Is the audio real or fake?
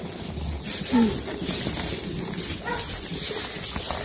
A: real